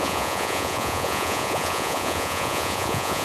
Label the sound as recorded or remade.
remade